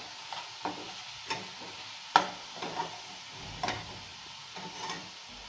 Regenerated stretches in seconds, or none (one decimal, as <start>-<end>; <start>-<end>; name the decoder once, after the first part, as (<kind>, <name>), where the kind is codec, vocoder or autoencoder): none